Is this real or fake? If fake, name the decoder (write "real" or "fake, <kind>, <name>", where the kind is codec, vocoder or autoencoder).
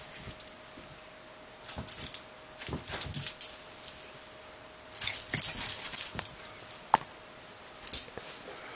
real